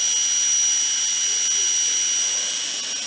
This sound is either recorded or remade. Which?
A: recorded